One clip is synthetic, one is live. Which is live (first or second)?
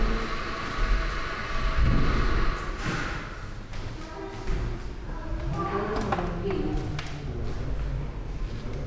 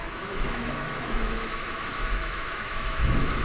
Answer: first